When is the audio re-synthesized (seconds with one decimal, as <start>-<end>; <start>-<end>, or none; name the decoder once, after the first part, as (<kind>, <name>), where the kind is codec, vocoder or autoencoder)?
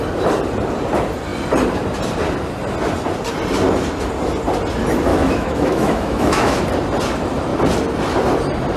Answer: 5.1-6.6 (autoencoder, DAC-VAE)